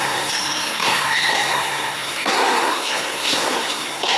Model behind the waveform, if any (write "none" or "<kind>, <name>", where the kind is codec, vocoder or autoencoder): codec, SNAC